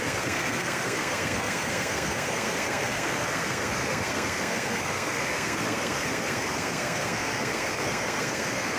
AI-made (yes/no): yes